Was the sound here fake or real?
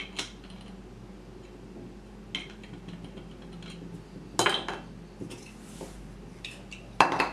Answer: real